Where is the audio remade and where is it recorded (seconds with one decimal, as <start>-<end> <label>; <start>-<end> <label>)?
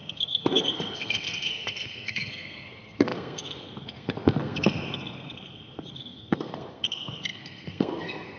0.0-8.4 remade